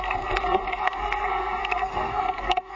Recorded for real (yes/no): no